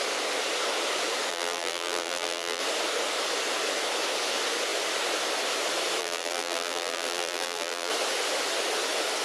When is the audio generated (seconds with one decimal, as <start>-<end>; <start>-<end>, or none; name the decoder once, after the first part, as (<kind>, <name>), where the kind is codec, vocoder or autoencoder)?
1.3-2.6 (vocoder, BigVGAN v2); 6.0-7.9